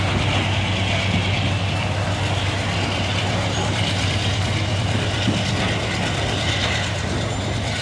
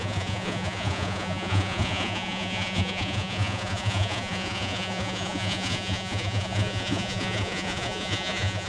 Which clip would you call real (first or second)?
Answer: first